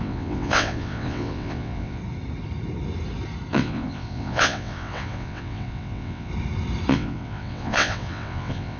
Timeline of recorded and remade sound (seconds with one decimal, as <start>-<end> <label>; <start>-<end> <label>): 0.0-2.0 remade; 2.0-3.5 recorded; 3.5-6.3 remade; 6.3-6.9 recorded; 6.9-8.8 remade